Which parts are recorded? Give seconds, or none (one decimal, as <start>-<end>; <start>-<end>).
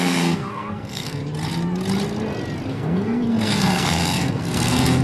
1.2-2.7